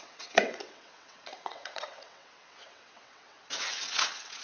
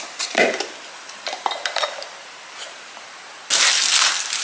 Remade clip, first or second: first